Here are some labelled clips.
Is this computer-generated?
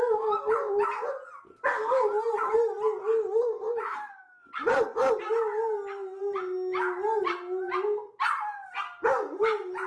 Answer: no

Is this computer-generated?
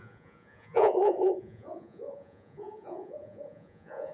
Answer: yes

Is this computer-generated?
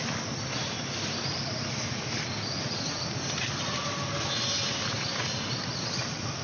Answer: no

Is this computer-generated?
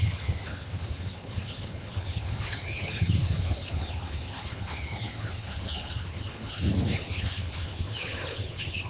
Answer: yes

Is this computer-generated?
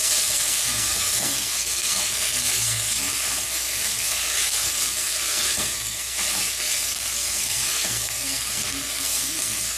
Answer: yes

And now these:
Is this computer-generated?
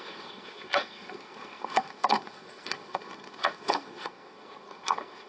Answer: yes